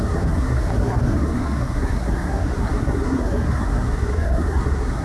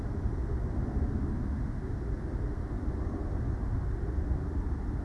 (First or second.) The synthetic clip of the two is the first